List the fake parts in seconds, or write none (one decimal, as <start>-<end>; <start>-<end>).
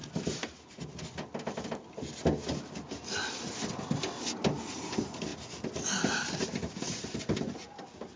none